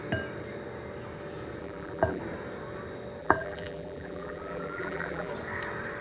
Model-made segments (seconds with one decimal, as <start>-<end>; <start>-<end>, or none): 1.6-2.2; 3.2-5.3